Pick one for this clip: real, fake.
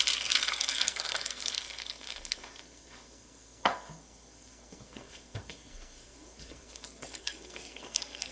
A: fake